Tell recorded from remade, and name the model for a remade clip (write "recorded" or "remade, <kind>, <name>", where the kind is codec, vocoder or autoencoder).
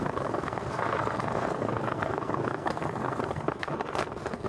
remade, codec, SNAC